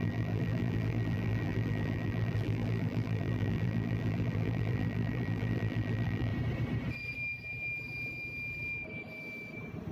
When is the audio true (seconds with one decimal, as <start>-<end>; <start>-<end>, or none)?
6.3-9.9